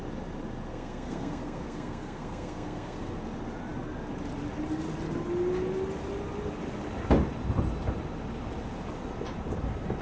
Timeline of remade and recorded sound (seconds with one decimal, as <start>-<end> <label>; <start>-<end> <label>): 0.0-0.7 recorded; 0.7-3.2 remade; 3.2-10.0 recorded

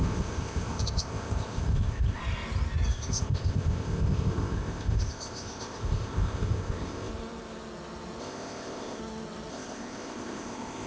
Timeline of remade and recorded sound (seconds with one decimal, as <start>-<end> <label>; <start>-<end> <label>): 0.0-2.2 remade; 2.2-2.9 recorded; 2.9-7.1 remade; 7.1-8.2 recorded; 8.2-9.0 remade; 9.0-9.5 recorded; 9.5-10.9 remade

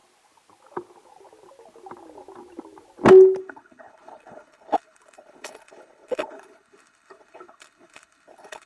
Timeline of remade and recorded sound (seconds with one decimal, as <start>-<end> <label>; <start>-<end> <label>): 0.0-3.4 recorded; 3.4-8.7 remade

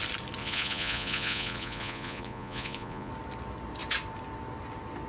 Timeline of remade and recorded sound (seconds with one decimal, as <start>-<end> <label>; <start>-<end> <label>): 0.0-0.4 recorded; 0.4-3.1 remade; 3.1-5.1 recorded